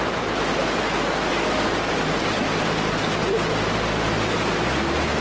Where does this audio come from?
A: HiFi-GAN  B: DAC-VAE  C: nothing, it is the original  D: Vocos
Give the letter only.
C